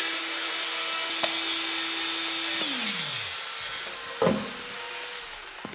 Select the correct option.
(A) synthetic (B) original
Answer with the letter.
B